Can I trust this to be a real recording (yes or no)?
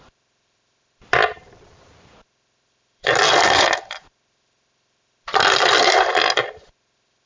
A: no